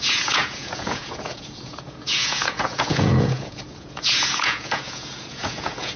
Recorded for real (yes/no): no